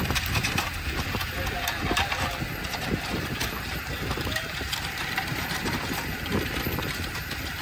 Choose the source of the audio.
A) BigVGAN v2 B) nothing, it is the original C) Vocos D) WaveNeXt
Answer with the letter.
A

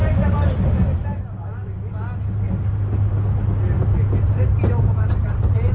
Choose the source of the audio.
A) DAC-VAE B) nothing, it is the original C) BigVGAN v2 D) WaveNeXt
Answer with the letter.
B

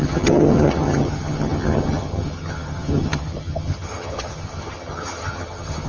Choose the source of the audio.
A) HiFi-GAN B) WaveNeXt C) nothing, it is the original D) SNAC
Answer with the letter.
A